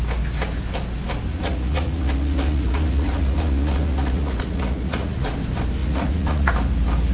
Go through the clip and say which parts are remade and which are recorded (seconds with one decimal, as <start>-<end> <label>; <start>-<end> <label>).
0.0-1.3 recorded; 1.3-5.3 remade; 5.3-5.8 recorded; 5.8-6.5 remade; 6.5-7.1 recorded